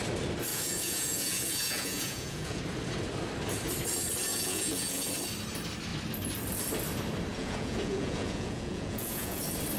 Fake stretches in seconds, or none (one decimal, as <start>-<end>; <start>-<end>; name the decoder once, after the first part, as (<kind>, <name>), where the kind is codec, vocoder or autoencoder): 0.5-2.6 (vocoder, Vocos); 4.3-5.1; 7.3-9.4